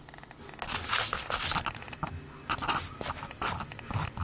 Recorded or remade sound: recorded